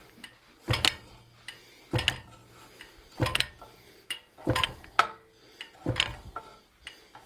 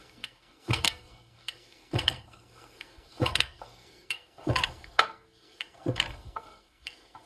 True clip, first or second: first